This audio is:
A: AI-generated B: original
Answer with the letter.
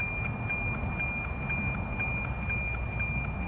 B